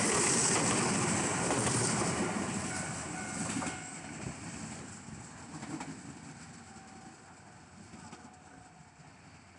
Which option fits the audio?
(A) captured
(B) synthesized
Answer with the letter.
A